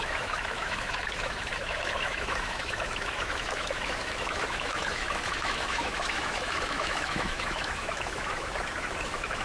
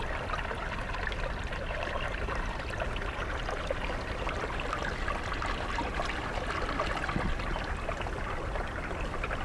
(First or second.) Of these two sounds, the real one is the second